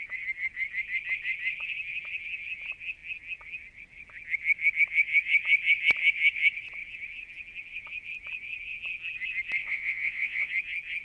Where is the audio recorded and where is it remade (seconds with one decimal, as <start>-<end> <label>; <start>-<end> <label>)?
0.0-9.6 recorded; 9.6-10.5 remade; 10.5-11.0 recorded